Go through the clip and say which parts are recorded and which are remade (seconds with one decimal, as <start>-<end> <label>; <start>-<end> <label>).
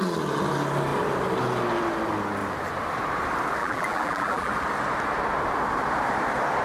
0.0-3.6 recorded; 3.6-4.5 remade; 4.5-6.6 recorded